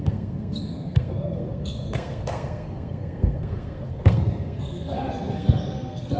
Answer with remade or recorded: remade